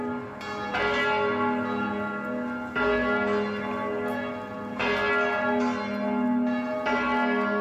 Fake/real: real